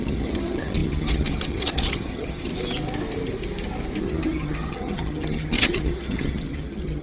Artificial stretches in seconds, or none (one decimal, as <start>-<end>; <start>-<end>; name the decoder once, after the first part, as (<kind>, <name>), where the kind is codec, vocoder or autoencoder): 0.0-2.5 (vocoder, HiFi-GAN); 4.0-7.0